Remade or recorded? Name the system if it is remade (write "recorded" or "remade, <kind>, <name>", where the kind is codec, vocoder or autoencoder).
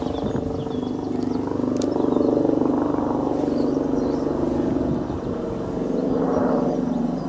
recorded